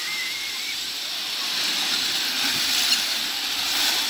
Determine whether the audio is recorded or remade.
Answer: recorded